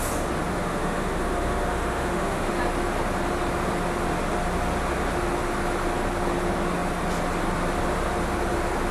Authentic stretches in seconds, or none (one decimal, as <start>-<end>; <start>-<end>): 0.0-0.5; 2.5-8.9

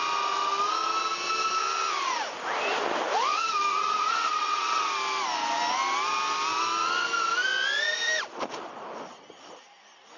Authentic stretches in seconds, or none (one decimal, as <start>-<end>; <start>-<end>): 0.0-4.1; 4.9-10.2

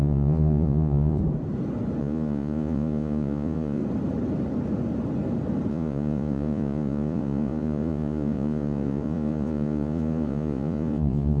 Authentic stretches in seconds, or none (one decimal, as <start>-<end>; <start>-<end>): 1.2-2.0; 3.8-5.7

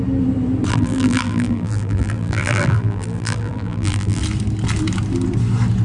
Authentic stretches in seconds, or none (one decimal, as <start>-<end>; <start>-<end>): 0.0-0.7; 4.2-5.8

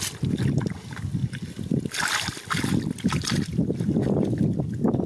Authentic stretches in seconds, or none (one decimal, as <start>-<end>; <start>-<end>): 0.0-5.1

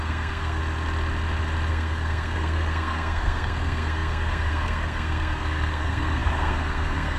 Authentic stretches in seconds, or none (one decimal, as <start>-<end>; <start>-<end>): 0.6-1.7

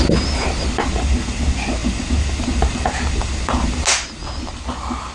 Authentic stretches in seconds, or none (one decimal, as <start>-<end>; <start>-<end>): 0.0-5.1